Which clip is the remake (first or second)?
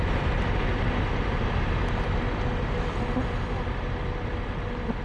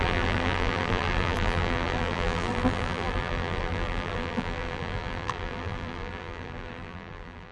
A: second